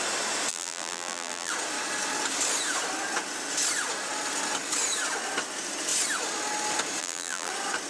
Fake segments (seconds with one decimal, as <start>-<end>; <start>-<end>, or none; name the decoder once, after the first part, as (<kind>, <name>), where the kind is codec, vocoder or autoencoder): 0.5-1.5 (vocoder, BigVGAN v2); 7.0-7.5